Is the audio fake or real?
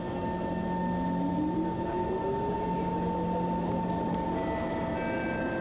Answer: real